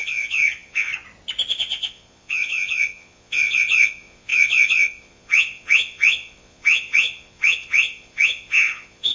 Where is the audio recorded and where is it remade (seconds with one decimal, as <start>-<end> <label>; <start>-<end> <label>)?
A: 0.0-0.9 remade; 0.9-1.5 recorded; 1.5-9.1 remade